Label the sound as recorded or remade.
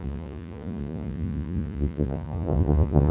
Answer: remade